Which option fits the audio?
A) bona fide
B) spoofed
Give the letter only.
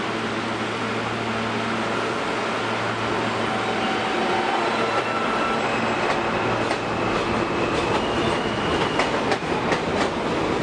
A